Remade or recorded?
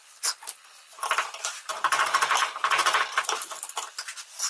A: recorded